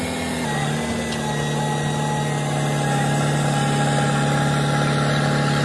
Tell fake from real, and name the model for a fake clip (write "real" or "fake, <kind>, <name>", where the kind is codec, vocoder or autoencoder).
real